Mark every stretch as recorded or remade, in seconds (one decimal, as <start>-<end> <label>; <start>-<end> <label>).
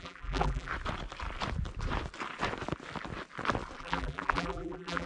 0.0-0.7 remade; 0.7-3.8 recorded; 3.8-5.1 remade